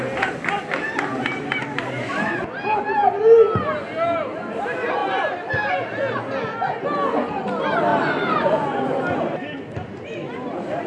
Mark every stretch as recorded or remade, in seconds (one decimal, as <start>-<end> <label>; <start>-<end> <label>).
0.0-7.9 recorded; 7.9-8.5 remade; 8.5-10.9 recorded